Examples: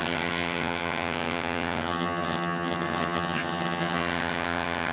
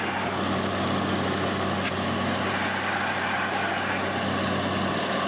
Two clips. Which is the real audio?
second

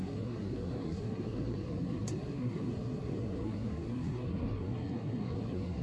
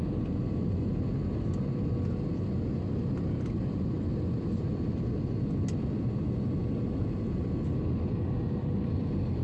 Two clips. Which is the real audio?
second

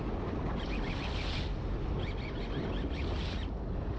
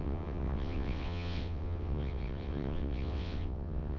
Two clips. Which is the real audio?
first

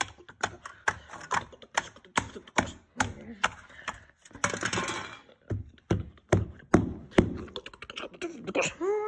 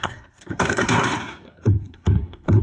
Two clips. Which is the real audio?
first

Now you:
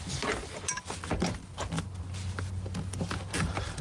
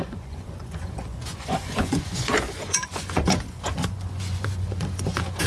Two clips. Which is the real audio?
first